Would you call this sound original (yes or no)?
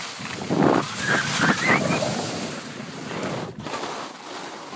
yes